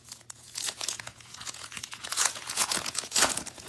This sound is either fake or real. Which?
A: fake